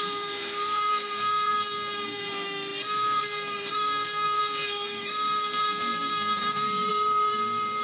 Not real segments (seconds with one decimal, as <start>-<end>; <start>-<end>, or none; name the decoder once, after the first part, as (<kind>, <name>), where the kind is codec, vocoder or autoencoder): 0.0-7.8 (codec, SNAC)